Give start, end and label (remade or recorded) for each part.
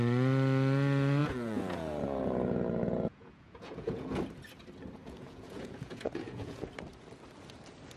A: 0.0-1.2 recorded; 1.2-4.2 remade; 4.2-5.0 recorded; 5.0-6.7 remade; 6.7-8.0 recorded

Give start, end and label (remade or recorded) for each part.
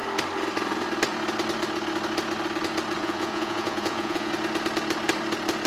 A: 0.0-3.0 recorded; 3.0-4.3 remade; 4.3-5.7 recorded